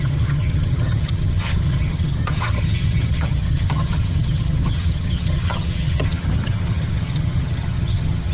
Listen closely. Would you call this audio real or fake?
fake